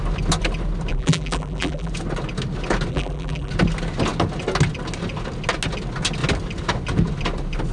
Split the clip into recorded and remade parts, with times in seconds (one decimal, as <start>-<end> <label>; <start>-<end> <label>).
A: 0.0-0.9 recorded; 0.9-1.9 remade; 1.9-2.9 recorded; 2.9-3.5 remade; 3.5-7.7 recorded